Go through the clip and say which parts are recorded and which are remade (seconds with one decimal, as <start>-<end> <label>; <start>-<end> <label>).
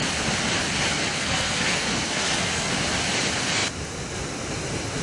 0.0-0.9 recorded; 0.9-2.7 remade; 2.7-5.0 recorded